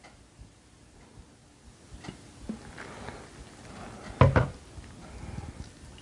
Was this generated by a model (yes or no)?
no